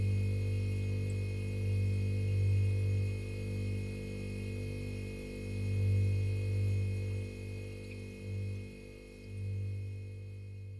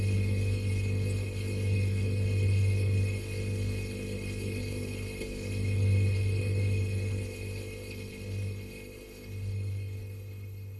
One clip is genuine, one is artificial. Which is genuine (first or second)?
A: first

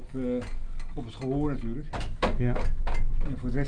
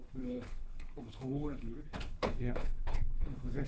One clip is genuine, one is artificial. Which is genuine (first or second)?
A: first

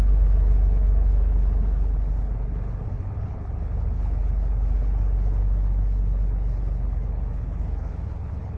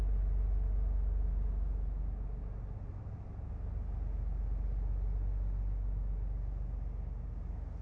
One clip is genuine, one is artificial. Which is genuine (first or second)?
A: second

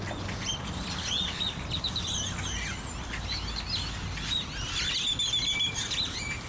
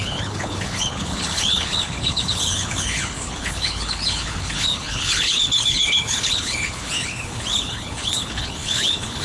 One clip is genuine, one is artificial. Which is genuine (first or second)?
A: first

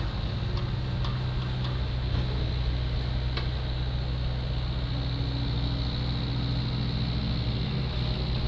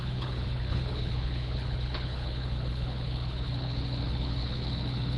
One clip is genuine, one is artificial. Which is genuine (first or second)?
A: first